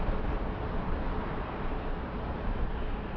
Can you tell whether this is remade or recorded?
recorded